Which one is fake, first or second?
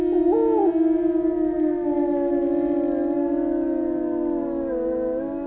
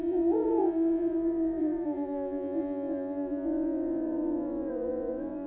second